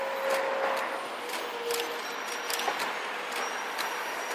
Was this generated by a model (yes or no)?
no